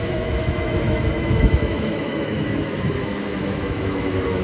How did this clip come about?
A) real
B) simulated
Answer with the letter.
B